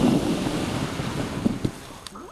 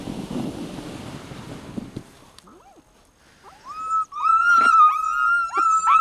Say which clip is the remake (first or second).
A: first